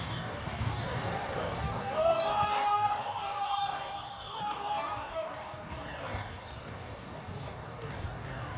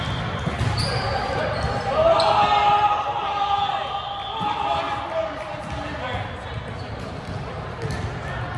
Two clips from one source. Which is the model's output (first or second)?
first